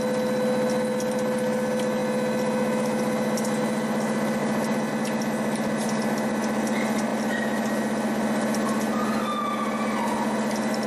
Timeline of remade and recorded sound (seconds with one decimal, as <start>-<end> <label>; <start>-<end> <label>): 0.0-10.9 recorded